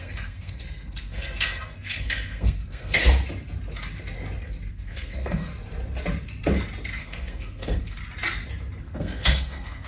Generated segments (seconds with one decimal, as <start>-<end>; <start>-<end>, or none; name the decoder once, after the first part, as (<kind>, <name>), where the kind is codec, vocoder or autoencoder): 0.0-3.0 (codec, SNAC); 4.7-5.5; 6.9-8.0; 8.8-9.9